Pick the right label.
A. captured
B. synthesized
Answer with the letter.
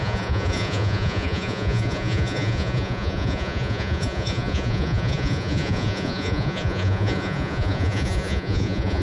B